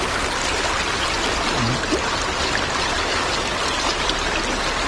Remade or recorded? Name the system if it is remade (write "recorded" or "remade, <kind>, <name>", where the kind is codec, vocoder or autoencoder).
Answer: recorded